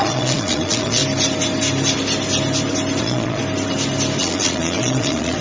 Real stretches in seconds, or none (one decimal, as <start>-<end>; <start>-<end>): 1.0-3.0; 3.4-4.2